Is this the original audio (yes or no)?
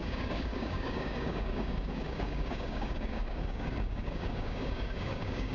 no